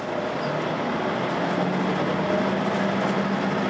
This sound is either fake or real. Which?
real